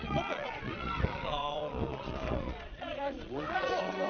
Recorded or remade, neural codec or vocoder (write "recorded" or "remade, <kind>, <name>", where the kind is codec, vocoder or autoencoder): remade, vocoder, Vocos